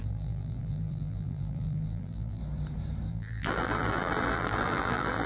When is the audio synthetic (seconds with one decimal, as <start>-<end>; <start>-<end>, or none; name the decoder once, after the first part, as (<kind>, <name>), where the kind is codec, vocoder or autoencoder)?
0.0-2.4 (vocoder, BigVGAN v2); 3.1-5.3